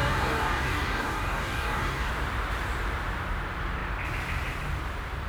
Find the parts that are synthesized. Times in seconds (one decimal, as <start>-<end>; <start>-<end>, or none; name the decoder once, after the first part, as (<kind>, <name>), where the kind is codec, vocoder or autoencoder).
0.0-2.1 (codec, DAC)

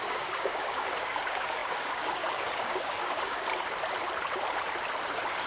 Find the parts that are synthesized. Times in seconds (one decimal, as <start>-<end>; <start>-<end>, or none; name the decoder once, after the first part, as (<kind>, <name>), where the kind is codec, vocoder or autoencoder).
0.0-3.5 (codec, DAC); 5.1-5.5